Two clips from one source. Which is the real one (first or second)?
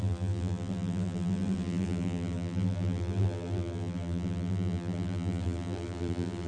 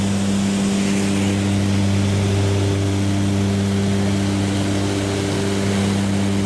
second